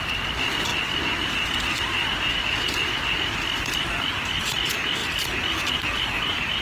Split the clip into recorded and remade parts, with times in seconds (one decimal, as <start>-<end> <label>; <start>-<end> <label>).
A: 0.0-6.6 recorded